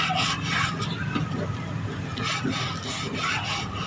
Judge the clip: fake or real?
real